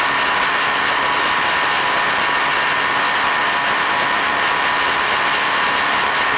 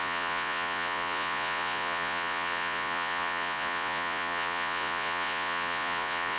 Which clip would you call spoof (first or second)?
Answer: second